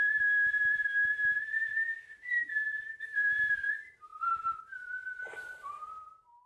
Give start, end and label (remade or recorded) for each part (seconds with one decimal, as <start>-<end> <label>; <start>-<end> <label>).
0.0-6.5 recorded